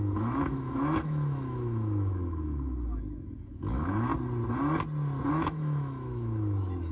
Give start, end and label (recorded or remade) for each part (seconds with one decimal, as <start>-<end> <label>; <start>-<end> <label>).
0.0-4.1 remade; 4.1-5.3 recorded; 5.3-6.9 remade